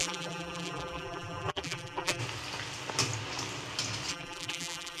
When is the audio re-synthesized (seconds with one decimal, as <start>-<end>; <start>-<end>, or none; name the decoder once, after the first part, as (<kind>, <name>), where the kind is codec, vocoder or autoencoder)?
0.0-2.2 (vocoder, BigVGAN v2); 4.1-5.0